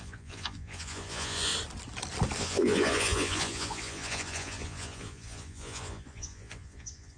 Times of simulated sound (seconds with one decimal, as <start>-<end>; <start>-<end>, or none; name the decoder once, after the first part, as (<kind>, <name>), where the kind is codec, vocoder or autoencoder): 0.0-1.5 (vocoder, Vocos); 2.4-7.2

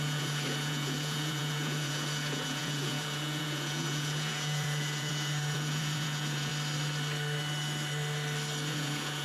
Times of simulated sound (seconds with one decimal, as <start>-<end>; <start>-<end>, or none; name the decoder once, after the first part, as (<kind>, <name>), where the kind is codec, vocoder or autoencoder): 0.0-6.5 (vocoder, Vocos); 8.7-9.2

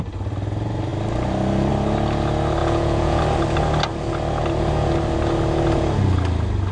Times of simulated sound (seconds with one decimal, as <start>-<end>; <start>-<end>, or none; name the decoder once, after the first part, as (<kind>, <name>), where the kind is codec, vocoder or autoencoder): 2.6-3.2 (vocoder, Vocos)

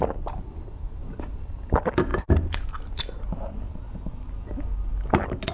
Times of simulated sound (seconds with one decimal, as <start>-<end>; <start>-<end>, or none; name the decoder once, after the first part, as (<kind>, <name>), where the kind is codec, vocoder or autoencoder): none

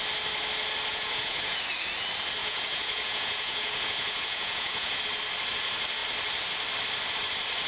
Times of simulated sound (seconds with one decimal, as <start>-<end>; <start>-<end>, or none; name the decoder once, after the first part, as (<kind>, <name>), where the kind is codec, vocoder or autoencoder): 0.9-1.6 (vocoder, Vocos); 2.4-5.0